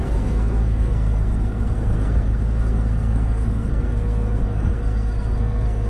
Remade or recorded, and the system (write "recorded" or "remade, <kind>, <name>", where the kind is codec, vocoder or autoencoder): remade, codec, SNAC